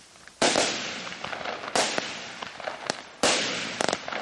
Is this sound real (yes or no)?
yes